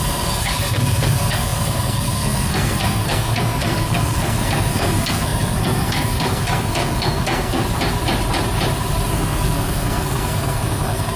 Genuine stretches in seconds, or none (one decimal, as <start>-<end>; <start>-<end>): 7.6-9.1